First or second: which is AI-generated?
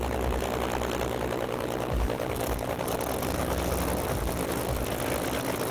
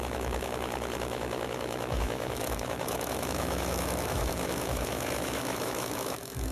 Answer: second